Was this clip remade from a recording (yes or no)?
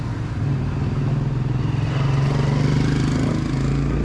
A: no